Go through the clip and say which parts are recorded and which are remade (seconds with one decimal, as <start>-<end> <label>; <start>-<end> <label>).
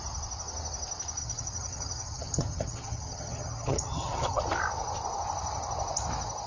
0.0-1.2 recorded; 1.2-4.4 remade; 4.4-6.5 recorded